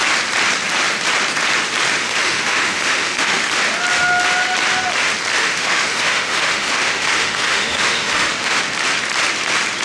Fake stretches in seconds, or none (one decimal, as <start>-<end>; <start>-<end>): 2.0-3.5; 5.4-8.6